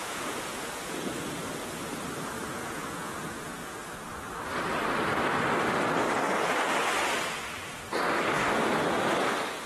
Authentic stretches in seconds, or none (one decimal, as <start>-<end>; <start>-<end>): 1.4-2.6; 4.2-9.7